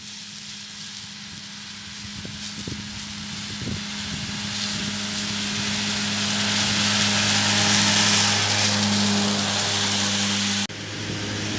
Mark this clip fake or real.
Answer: real